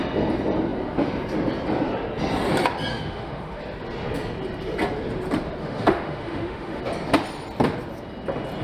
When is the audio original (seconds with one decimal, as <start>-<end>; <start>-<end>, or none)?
0.0-2.9; 3.6-5.6; 6.8-8.6